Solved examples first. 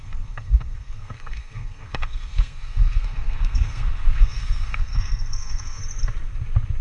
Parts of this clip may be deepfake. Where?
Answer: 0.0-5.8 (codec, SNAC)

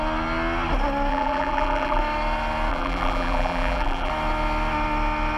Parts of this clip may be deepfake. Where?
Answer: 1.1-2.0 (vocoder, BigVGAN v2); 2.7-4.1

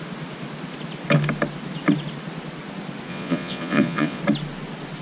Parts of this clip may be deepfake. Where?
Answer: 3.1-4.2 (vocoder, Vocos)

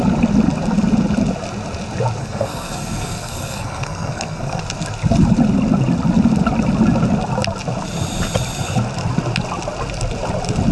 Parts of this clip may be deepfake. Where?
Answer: 2.2-4.6 (codec, SNAC)

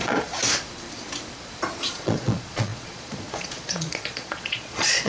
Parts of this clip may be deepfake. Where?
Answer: 0.0-0.4 (vocoder, Vocos); 1.9-5.1

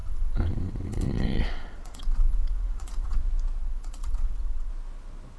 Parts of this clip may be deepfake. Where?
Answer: 0.0-3.2 (vocoder, WaveNeXt); 3.6-4.7